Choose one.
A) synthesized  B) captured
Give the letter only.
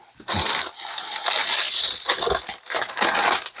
B